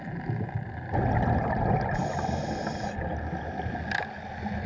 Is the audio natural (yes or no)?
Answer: yes